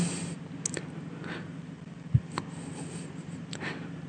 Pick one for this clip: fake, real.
real